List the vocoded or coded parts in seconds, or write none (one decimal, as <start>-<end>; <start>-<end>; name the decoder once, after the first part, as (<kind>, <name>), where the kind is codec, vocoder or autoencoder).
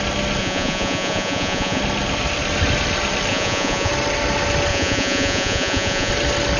0.4-1.8 (vocoder, Vocos); 3.3-3.9; 4.7-6.1